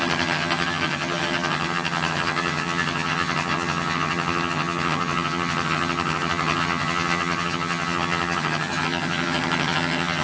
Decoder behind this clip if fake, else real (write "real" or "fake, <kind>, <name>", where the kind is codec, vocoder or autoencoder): fake, vocoder, HiFi-GAN